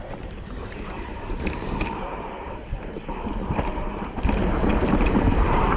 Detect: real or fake fake